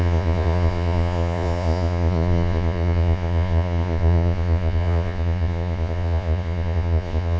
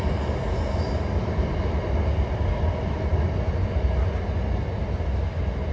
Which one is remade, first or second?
first